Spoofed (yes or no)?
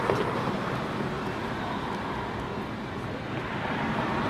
no